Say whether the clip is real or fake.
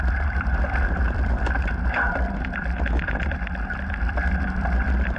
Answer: fake